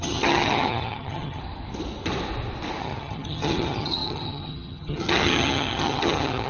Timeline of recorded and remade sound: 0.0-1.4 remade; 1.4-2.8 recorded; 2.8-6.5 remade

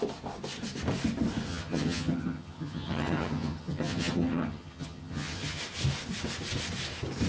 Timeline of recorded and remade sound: 0.0-1.5 recorded; 1.5-5.6 remade; 5.6-7.3 recorded

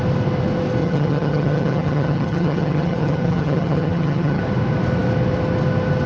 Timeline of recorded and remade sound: 0.0-0.8 recorded; 0.8-4.4 remade; 4.4-6.1 recorded

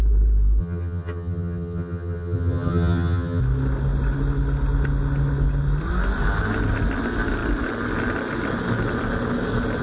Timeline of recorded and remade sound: 0.0-0.6 recorded; 0.6-3.4 remade; 3.4-9.8 recorded